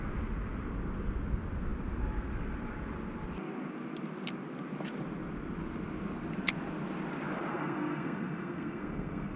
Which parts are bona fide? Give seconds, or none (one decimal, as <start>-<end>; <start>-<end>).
0.0-7.5